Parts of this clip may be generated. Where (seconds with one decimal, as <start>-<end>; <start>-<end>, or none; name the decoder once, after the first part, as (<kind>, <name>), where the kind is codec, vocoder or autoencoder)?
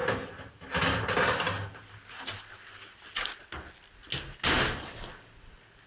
none